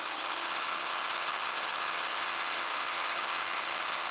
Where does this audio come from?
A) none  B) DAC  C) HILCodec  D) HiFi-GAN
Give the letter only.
D